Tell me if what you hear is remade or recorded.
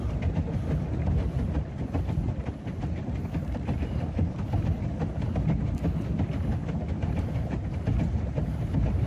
recorded